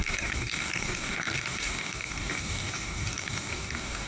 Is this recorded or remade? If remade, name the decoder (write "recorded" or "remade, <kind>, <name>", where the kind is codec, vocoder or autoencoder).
remade, codec, DAC